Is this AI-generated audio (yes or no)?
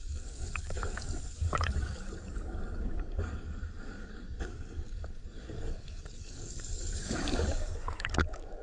yes